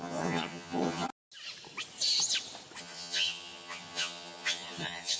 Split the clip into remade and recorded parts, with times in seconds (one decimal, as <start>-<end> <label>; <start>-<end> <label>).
0.0-1.1 remade; 1.1-2.8 recorded; 2.8-5.2 remade